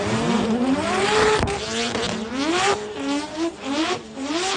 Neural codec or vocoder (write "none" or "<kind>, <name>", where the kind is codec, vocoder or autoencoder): vocoder, BigVGAN v2